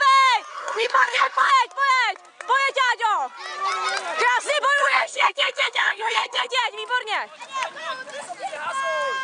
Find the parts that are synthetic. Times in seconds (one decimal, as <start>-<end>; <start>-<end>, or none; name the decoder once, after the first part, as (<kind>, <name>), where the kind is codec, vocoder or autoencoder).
0.5-1.5 (codec, SNAC); 4.8-6.5